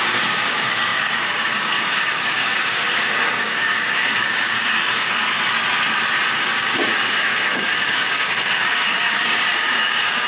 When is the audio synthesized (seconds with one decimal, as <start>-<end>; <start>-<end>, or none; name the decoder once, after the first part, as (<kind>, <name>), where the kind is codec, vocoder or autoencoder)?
0.0-5.2 (codec, DAC); 6.4-10.3